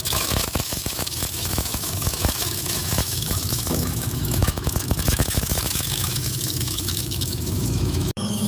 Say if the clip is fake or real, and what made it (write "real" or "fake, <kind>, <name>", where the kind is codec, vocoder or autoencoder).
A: fake, autoencoder, DAC-VAE